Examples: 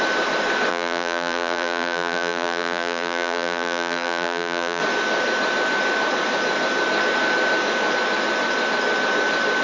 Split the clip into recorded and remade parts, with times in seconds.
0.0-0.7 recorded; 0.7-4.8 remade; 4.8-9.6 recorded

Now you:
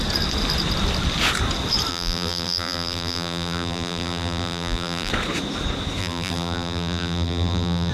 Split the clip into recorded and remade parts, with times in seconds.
0.0-1.9 recorded; 1.9-5.1 remade; 5.1-6.0 recorded; 6.0-7.9 remade

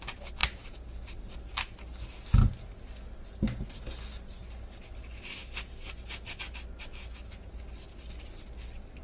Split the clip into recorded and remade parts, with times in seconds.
0.0-0.4 recorded; 0.4-1.3 remade; 1.3-9.0 recorded

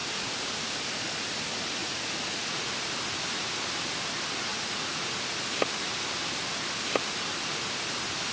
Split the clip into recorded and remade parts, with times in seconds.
0.0-0.7 remade; 0.7-1.8 recorded; 1.8-2.7 remade; 2.7-4.5 recorded; 4.5-5.1 remade; 5.1-8.3 recorded

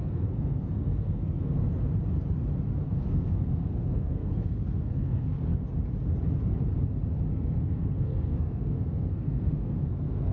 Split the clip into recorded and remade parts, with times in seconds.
0.0-1.6 remade; 1.6-2.8 recorded; 2.8-5.5 remade; 5.5-7.3 recorded; 7.3-10.3 remade

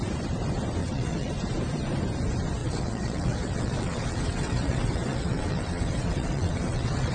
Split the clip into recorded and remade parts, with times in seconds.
0.0-0.8 recorded; 0.8-1.3 remade; 1.3-2.6 recorded; 2.6-7.1 remade

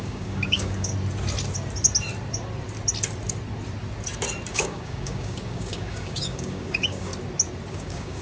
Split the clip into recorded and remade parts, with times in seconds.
0.0-0.9 remade; 0.9-4.5 recorded; 4.5-7.1 remade; 7.1-7.7 recorded; 7.7-8.2 remade